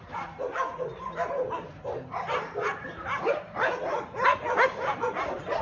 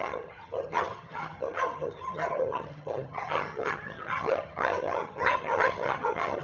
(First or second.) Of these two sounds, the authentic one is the first